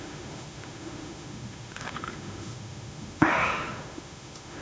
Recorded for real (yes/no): no